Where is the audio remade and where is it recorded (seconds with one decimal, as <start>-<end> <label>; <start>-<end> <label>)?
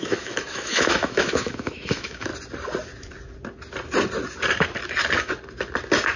0.0-2.3 remade; 2.3-6.2 recorded